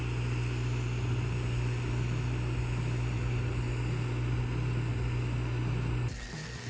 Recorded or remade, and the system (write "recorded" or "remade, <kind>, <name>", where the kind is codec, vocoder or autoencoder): recorded